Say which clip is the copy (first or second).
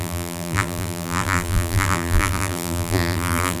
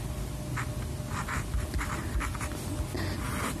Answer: first